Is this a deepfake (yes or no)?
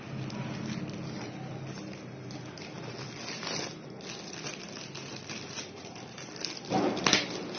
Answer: no